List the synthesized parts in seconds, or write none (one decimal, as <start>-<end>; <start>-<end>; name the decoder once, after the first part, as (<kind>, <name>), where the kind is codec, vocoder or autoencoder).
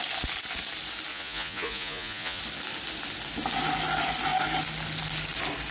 1.1-2.4 (vocoder, Vocos)